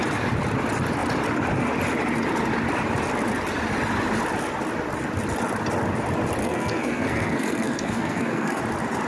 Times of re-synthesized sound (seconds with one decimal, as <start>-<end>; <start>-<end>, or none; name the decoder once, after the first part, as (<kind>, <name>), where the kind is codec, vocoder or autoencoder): 6.4-8.6 (codec, SNAC)